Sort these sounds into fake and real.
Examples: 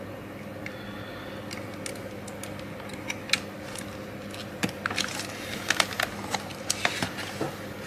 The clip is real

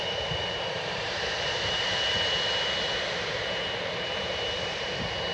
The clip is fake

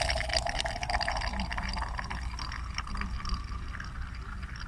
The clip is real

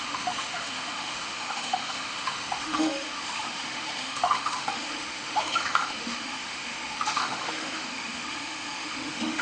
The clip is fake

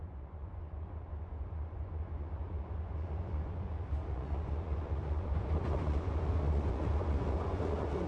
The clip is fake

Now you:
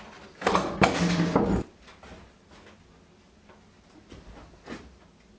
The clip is real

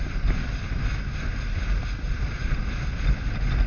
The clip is real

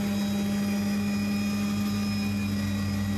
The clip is real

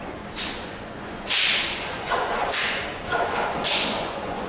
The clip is fake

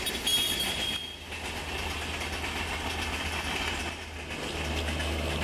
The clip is real